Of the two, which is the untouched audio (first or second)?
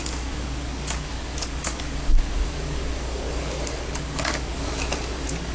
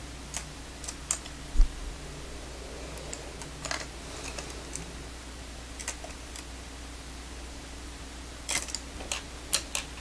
second